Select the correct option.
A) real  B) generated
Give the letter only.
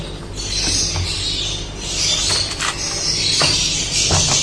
A